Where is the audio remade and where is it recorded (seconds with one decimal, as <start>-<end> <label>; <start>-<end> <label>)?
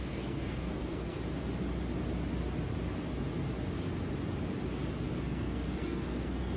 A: 0.0-1.2 remade; 1.2-5.2 recorded; 5.2-6.6 remade